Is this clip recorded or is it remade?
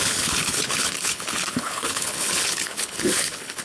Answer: remade